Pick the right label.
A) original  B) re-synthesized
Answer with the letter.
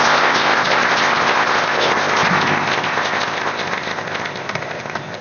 B